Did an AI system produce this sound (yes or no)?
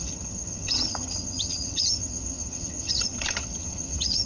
yes